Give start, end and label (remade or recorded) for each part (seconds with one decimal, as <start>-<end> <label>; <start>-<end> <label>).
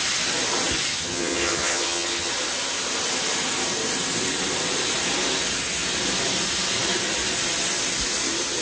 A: 0.0-0.9 recorded; 0.9-2.3 remade; 2.3-8.6 recorded